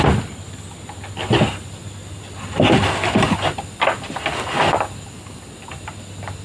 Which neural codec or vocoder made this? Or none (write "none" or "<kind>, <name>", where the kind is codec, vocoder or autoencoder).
none